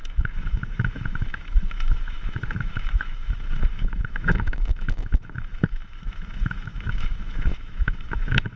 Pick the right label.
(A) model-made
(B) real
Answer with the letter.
A